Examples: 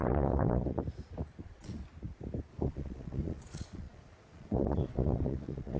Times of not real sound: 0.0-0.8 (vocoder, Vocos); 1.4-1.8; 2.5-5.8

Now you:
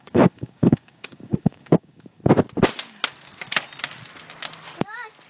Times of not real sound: 0.0-2.2 (codec, DAC)

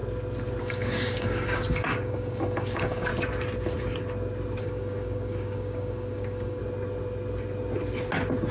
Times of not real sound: 0.6-3.1 (codec, DAC); 4.6-6.6

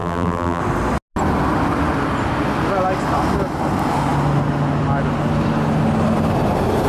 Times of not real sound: 0.0-0.6 (vocoder, BigVGAN v2)

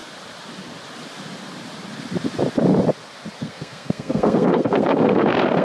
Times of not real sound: 3.4-5.6 (codec, SNAC)

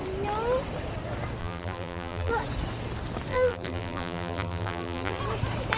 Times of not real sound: 1.4-2.3 (vocoder, BigVGAN v2); 3.3-5.2

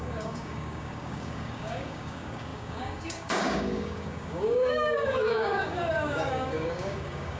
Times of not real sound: 0.0-7.4 (codec, DAC)